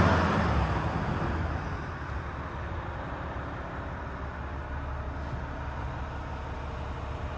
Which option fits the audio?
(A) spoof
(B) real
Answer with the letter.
B